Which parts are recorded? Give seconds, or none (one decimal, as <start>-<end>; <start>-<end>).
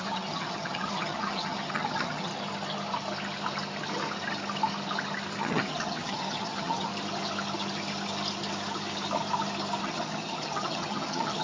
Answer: 2.3-5.4; 6.9-9.8